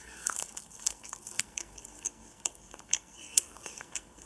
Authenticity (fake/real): fake